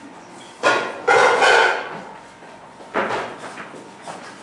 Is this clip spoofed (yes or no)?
yes